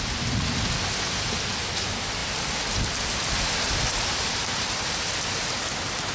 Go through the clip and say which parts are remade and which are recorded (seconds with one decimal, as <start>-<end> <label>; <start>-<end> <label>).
0.0-6.1 recorded